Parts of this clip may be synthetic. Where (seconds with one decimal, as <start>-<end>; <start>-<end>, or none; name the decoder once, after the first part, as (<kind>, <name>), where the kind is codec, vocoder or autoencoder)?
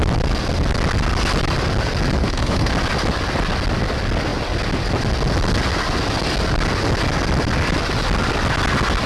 2.2-2.7 (autoencoder, DAC-VAE)